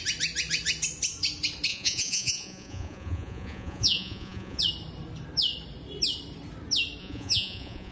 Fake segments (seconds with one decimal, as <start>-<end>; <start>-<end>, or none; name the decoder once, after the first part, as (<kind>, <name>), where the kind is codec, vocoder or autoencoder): 1.7-4.6 (vocoder, Vocos); 7.0-7.9